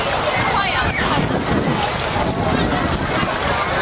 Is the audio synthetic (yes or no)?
no